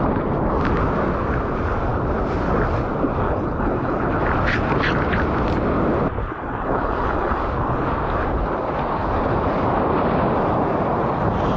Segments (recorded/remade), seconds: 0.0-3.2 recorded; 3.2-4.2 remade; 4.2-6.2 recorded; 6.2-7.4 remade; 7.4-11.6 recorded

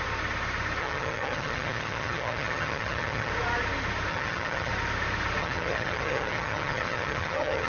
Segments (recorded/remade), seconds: 0.0-0.8 recorded; 0.8-3.3 remade; 3.3-4.1 recorded; 4.1-4.7 remade; 4.7-5.4 recorded; 5.4-7.7 remade

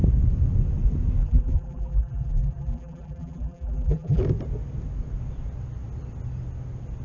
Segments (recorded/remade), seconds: 0.0-1.2 recorded; 1.2-4.2 remade; 4.2-7.0 recorded

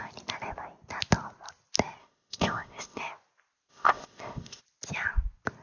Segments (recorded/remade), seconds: 0.0-2.0 recorded; 2.0-3.0 remade; 3.0-3.7 recorded; 3.7-4.6 remade; 4.6-5.6 recorded